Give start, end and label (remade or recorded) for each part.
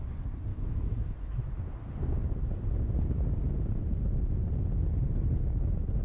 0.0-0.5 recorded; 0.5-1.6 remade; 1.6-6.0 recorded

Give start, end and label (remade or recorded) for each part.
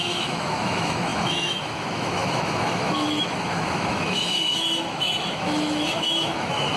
0.0-6.8 remade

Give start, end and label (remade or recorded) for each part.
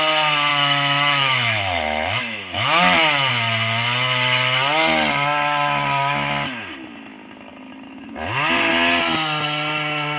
0.0-0.5 recorded; 0.5-3.3 remade; 3.3-10.2 recorded